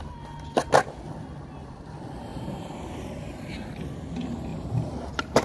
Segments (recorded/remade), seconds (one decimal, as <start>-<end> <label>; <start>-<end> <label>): 0.0-2.3 recorded; 2.3-3.4 remade; 3.4-4.5 recorded; 4.5-5.4 remade